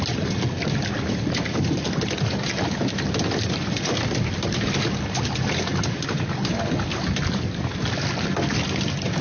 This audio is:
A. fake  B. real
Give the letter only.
B